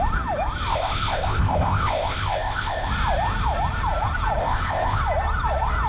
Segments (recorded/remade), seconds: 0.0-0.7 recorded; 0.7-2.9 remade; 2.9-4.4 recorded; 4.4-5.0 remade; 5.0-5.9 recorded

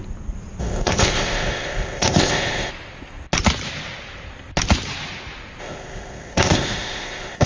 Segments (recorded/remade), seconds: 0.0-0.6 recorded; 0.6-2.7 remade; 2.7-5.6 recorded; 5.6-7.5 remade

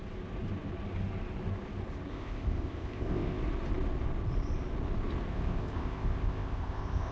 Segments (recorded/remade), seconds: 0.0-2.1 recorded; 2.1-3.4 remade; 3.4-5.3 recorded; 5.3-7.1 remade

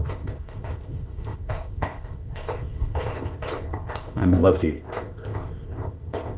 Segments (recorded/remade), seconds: 0.0-6.4 remade

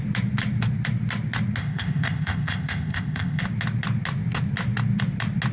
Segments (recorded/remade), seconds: 0.0-1.6 recorded; 1.6-3.4 remade; 3.4-5.5 recorded

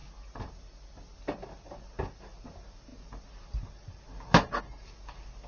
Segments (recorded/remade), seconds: 0.0-5.5 recorded

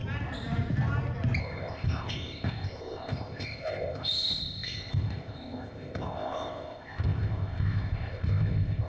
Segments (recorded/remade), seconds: 0.0-1.4 recorded; 1.4-8.9 remade

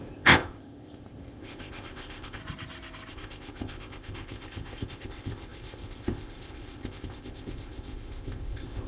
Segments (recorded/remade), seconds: 0.0-2.4 remade; 2.4-3.1 recorded; 3.1-8.9 remade